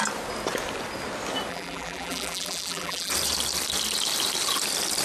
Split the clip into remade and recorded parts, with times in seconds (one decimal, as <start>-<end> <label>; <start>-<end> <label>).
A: 0.0-1.5 recorded; 1.5-3.1 remade; 3.1-5.0 recorded